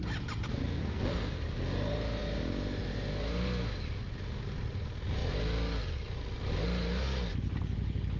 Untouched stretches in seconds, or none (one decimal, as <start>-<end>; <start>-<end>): 0.0-0.5; 1.3-8.2